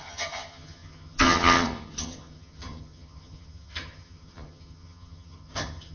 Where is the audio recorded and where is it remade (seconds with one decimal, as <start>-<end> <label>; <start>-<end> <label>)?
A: 0.0-5.9 remade